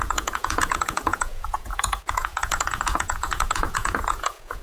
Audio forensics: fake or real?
fake